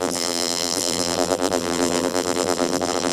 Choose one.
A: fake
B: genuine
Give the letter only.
A